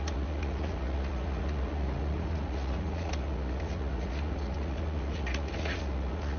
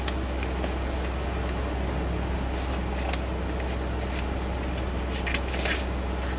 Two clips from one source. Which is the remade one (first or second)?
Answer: first